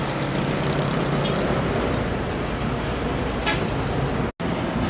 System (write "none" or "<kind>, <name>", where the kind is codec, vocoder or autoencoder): none